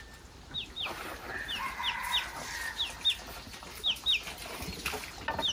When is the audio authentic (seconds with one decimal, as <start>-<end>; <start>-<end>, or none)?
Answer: 0.0-5.5